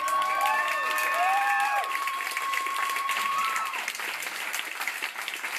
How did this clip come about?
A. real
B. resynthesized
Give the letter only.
B